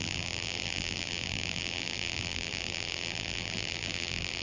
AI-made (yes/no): yes